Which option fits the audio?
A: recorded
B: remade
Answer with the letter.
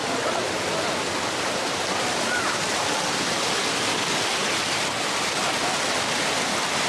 A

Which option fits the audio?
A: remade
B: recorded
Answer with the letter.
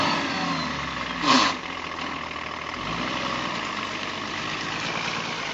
A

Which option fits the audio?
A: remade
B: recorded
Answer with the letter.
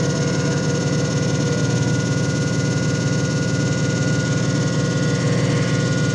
B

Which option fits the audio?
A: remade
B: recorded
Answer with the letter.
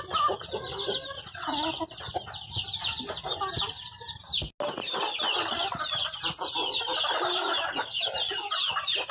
B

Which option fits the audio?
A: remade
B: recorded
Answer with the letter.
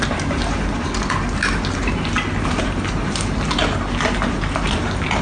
B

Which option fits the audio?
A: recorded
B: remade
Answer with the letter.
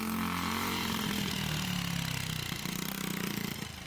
A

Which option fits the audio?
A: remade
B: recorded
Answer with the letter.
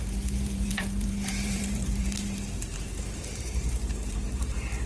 A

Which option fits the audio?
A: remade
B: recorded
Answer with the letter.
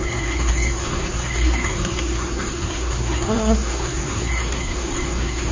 A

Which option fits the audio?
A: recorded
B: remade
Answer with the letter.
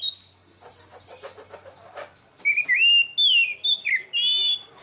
A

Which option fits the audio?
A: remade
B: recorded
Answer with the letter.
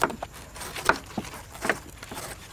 B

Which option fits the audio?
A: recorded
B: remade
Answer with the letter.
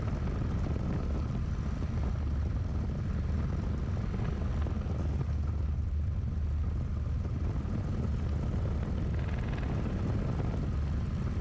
A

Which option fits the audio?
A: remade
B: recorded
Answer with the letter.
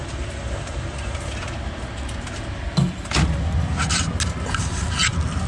B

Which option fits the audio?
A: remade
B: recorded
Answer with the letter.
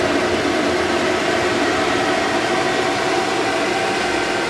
B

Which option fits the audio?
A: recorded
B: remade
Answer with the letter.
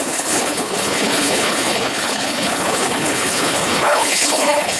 B